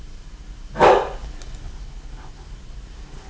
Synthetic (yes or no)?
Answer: no